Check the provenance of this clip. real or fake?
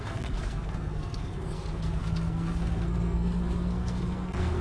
fake